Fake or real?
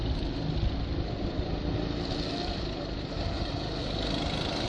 real